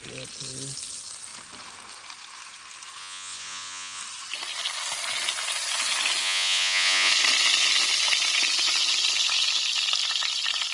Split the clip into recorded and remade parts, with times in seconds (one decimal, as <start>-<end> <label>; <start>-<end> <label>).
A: 0.0-3.0 recorded; 3.0-4.0 remade; 4.0-6.2 recorded; 6.2-7.1 remade; 7.1-10.7 recorded